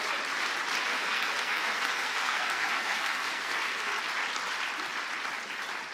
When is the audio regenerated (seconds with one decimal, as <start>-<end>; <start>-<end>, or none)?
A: 0.9-4.0